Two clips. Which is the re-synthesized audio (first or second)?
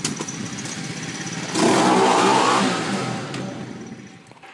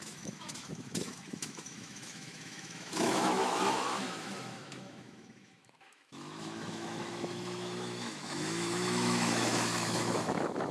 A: second